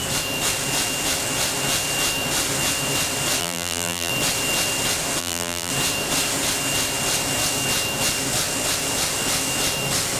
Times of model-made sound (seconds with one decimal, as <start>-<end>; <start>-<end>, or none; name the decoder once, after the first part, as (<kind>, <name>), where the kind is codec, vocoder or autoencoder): 3.4-4.1 (vocoder, BigVGAN v2); 5.2-5.7